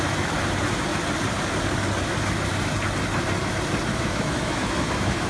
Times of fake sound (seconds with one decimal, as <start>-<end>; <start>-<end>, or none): 3.9-5.3